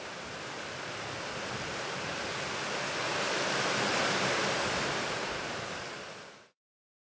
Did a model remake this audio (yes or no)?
no